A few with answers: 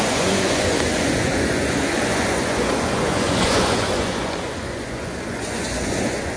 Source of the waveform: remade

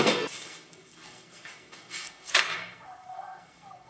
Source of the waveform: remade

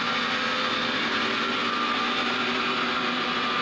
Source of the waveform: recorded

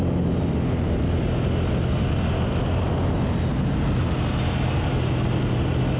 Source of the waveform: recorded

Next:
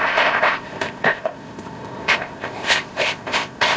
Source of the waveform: remade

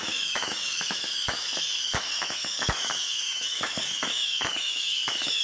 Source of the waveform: remade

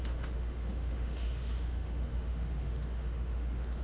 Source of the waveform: remade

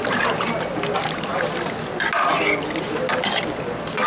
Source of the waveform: recorded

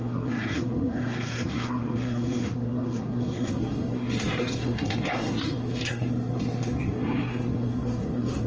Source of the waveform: remade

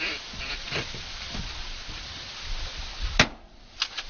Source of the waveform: recorded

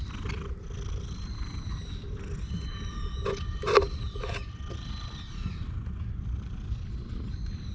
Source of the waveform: recorded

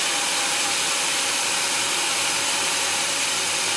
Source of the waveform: remade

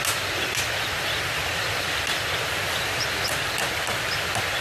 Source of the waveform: recorded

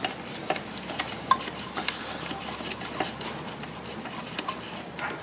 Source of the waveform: recorded